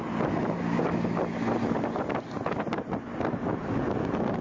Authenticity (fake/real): real